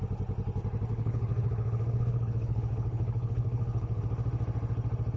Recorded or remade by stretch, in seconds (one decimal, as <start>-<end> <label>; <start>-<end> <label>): 0.0-0.9 recorded; 0.9-4.0 remade; 4.0-5.2 recorded